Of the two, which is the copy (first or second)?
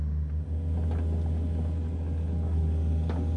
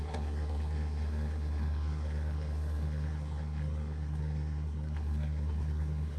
second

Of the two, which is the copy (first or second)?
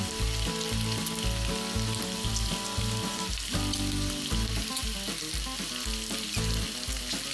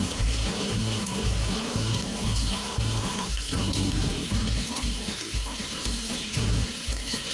second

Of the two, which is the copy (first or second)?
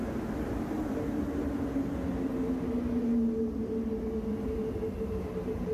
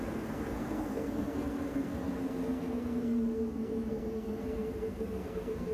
second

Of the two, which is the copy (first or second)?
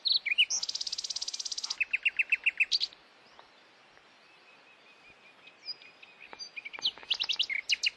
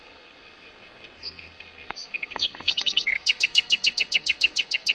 second